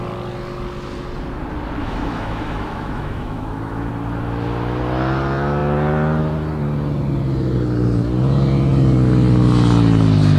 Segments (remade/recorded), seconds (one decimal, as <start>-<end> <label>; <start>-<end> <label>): 0.0-1.8 recorded; 1.8-3.9 remade; 3.9-10.4 recorded

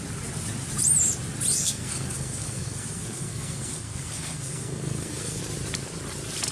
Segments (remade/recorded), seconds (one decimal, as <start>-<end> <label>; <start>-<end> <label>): 0.0-1.5 recorded; 1.5-5.4 remade; 5.4-6.5 recorded